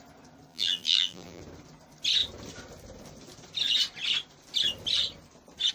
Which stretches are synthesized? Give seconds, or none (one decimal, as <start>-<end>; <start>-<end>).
0.5-1.4